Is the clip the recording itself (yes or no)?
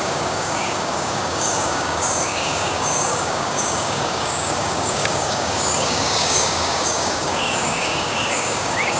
no